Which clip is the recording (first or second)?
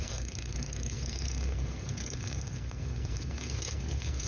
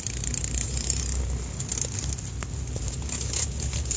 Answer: second